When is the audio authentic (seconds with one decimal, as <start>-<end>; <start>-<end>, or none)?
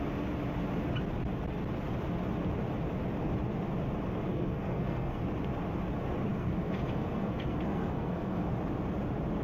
0.0-4.3; 5.2-6.3; 8.5-9.4